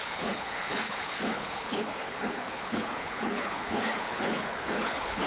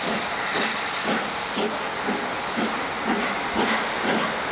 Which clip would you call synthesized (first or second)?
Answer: first